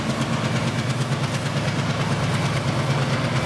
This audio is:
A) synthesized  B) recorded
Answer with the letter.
B